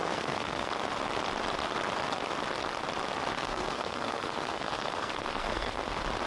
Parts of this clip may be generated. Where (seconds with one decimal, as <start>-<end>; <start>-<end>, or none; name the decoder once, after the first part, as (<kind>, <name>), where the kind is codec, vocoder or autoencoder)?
0.0-0.7 (codec, SNAC); 3.4-5.8